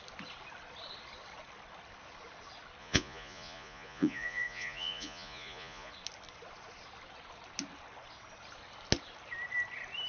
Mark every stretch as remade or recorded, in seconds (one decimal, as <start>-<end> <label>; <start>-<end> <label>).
0.0-2.8 recorded; 2.8-5.9 remade; 5.9-10.1 recorded